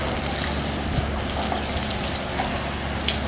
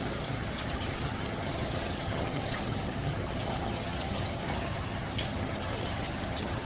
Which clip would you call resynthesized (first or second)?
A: second